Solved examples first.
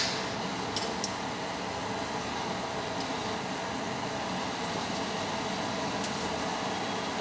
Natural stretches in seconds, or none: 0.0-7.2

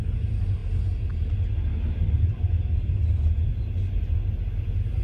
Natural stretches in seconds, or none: 0.0-5.0

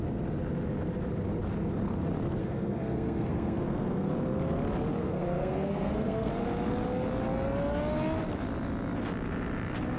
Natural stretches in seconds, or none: 0.0-2.4; 4.1-5.0; 6.3-10.0

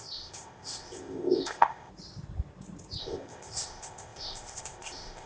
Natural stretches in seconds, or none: 1.9-3.0

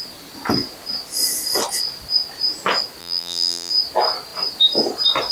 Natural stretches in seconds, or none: 0.0-3.0; 3.7-5.3

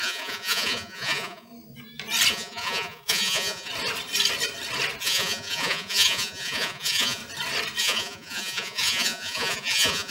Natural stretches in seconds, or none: 1.5-2.3; 3.7-5.0; 7.2-7.8

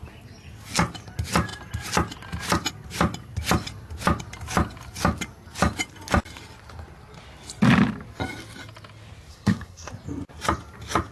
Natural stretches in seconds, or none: 0.0-9.3; 9.9-11.1